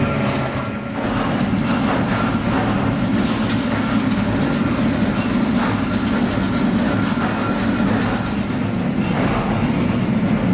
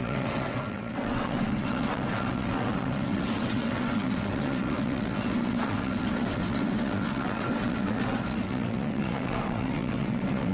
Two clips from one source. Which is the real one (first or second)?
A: first